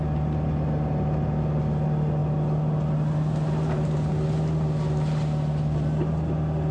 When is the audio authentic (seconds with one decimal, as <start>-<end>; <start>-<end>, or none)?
0.0-6.7